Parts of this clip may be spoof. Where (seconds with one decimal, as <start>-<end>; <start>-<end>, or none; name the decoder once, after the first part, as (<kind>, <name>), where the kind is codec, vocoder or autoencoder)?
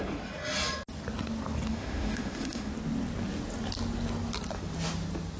1.7-2.7 (autoencoder, DAC-VAE)